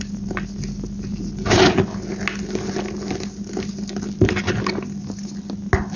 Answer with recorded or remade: recorded